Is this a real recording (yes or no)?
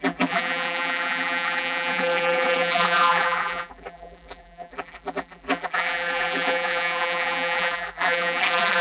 no